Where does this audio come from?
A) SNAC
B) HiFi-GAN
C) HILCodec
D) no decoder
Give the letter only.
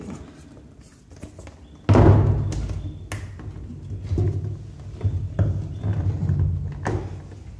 D